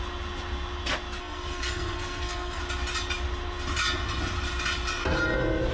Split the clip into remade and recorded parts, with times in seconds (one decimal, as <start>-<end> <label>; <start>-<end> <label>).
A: 0.0-1.2 recorded; 1.2-2.6 remade; 2.6-5.7 recorded